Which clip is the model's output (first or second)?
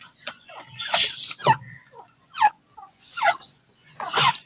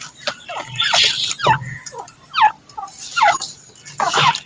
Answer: first